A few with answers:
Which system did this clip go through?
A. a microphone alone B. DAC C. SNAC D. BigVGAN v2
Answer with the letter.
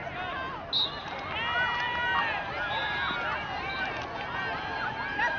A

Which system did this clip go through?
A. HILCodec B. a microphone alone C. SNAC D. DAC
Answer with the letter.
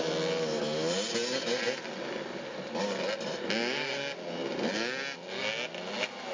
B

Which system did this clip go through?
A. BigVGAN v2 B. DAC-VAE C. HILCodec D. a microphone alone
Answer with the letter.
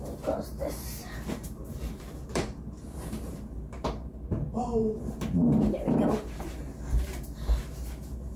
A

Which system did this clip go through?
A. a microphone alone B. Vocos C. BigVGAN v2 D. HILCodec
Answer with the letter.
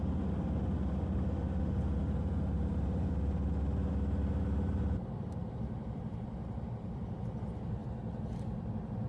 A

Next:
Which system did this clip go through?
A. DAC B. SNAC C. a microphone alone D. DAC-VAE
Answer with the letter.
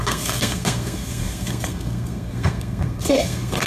B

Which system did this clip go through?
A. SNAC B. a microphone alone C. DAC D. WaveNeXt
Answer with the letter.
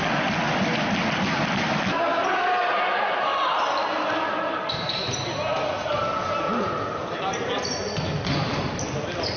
B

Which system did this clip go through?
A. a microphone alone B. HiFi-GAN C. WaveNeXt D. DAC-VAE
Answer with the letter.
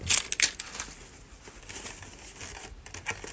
A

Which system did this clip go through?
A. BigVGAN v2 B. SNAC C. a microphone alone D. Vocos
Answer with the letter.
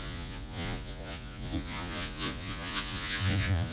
D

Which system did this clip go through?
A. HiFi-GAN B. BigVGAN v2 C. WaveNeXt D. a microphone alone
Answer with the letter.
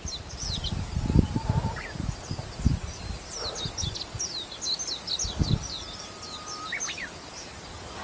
D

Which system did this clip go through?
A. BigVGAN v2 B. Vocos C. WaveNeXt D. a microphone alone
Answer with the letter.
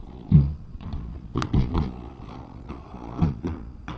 B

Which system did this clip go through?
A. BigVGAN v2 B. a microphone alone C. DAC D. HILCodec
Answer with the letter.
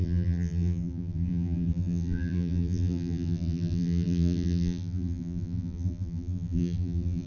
A